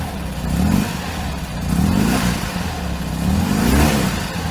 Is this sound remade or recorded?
recorded